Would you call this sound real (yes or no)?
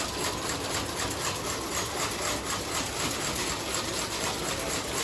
yes